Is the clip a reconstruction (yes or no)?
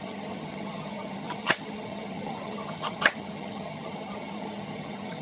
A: yes